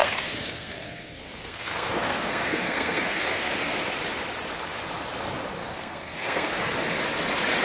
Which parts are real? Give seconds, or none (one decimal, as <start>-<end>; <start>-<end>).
3.5-5.6; 6.6-7.6